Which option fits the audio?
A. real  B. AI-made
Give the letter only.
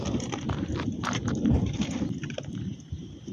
B